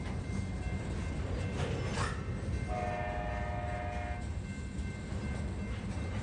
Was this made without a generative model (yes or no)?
yes